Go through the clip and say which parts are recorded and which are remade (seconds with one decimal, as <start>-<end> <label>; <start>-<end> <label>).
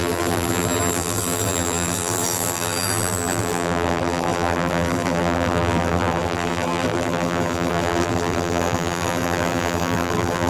0.0-10.5 remade